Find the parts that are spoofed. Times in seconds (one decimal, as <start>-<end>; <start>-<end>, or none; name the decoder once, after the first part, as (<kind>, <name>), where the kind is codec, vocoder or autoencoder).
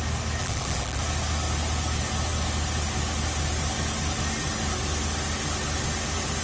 0.4-1.0 (vocoder, BigVGAN v2)